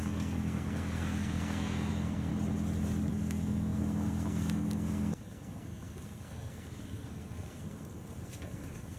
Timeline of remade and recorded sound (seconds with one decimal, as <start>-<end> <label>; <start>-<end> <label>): 0.0-2.3 remade; 2.3-3.1 recorded; 3.1-9.0 remade